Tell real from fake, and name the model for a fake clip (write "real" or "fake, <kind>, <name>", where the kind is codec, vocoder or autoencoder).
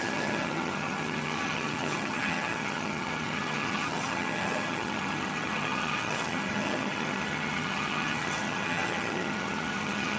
fake, vocoder, HiFi-GAN